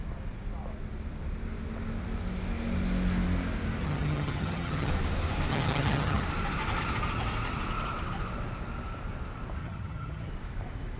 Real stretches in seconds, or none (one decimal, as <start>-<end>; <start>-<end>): 0.0-3.8; 4.9-5.5; 6.2-9.6; 10.3-11.0